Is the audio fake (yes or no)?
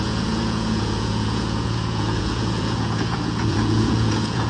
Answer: yes